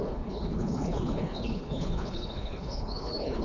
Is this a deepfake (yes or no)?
yes